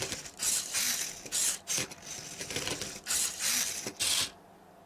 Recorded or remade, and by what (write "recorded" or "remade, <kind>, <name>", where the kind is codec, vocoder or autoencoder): recorded